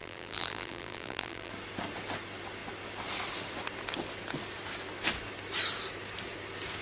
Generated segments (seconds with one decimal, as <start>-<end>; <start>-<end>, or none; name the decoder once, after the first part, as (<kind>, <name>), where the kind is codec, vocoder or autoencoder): 0.0-1.5 (vocoder, BigVGAN v2)